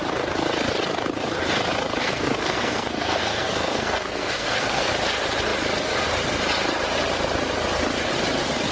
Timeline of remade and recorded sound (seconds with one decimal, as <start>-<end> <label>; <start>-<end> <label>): 0.0-2.0 recorded; 2.0-4.9 remade; 4.9-8.7 recorded